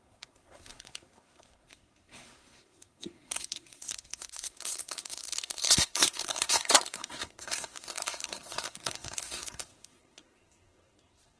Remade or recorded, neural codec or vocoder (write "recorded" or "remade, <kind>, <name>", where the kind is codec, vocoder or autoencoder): remade, codec, SNAC